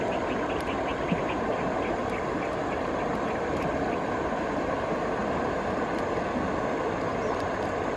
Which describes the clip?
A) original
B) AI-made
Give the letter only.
A